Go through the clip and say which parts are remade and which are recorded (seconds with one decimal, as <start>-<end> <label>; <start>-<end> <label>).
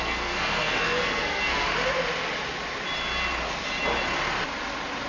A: 0.0-1.7 remade; 1.7-5.1 recorded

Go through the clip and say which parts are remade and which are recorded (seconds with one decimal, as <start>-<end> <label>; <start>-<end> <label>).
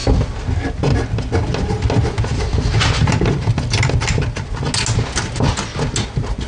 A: 0.0-6.5 recorded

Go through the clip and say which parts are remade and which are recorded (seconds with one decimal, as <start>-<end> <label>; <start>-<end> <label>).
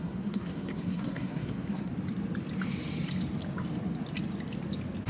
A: 0.0-1.9 remade; 1.9-5.1 recorded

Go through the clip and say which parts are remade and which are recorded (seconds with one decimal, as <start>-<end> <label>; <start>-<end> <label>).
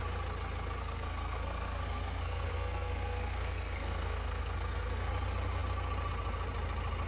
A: 0.0-0.8 recorded; 0.8-5.1 remade; 5.1-7.1 recorded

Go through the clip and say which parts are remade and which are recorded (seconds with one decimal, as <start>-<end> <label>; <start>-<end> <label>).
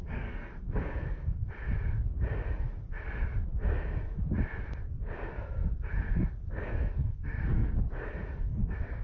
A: 0.0-1.4 remade; 1.4-6.5 recorded; 6.5-7.8 remade; 7.8-8.5 recorded; 8.5-9.0 remade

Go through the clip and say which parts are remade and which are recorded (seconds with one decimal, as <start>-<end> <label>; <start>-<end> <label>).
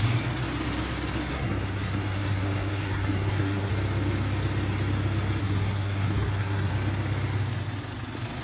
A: 0.0-1.3 recorded; 1.3-3.7 remade; 3.7-5.4 recorded; 5.4-6.7 remade; 6.7-8.4 recorded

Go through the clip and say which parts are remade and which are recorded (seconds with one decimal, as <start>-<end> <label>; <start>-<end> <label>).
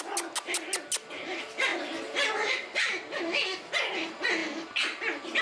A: 0.0-5.4 recorded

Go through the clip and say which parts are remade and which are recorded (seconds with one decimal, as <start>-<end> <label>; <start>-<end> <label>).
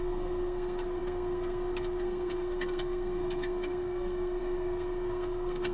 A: 0.0-5.7 remade